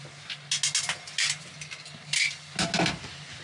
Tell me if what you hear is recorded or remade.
recorded